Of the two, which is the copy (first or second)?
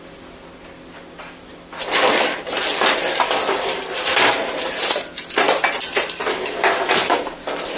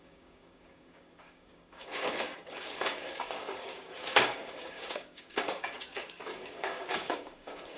second